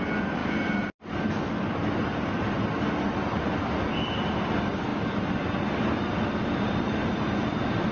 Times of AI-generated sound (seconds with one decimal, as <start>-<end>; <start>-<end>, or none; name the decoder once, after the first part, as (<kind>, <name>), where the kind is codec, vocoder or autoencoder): none